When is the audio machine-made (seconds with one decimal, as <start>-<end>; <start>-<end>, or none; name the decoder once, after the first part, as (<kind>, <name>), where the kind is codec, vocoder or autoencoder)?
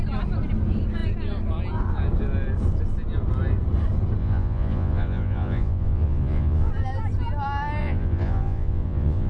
4.2-6.7 (vocoder, Vocos); 7.8-9.3